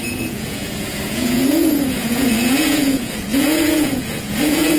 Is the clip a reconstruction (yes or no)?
yes